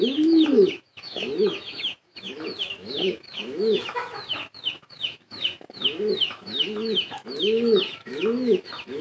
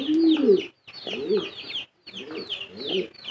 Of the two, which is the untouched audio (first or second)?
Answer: second